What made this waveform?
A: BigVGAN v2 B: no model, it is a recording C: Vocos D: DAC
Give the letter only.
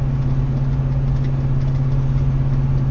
B